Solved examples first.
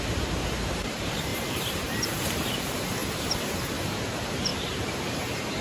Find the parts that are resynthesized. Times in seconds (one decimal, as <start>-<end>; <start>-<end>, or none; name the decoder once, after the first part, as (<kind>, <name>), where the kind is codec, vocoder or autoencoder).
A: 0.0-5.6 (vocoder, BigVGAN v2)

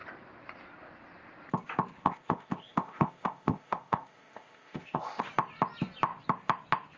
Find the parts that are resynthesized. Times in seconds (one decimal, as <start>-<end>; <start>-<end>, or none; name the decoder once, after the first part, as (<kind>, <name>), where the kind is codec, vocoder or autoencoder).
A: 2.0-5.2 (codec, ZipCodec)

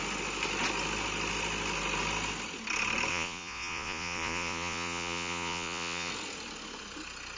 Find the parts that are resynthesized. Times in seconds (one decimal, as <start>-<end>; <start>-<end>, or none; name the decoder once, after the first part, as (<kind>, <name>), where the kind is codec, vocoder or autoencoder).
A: 3.1-6.1 (vocoder, Vocos)

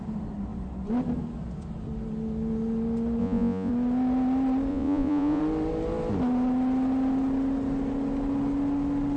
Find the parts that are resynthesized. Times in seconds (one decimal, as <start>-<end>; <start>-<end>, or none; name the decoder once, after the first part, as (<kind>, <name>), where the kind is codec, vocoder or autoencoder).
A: 3.2-3.7 (vocoder, Vocos); 4.7-5.4

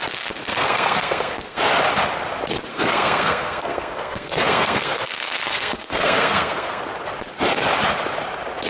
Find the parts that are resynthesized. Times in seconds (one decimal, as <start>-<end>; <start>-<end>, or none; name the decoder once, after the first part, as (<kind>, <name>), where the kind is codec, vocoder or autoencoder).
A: 0.5-1.6 (codec, SNAC); 2.7-6.8